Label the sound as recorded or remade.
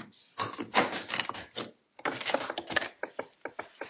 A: recorded